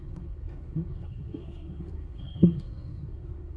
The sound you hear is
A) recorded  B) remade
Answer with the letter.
B